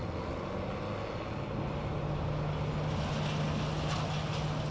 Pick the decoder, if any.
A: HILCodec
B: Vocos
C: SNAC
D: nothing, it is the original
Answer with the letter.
D